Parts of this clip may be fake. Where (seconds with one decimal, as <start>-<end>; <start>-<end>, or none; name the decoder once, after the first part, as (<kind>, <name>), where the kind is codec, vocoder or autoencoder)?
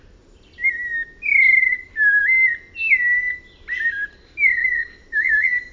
none